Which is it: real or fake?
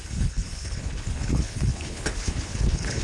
fake